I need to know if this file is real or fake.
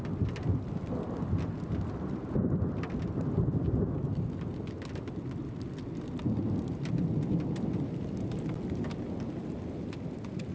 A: real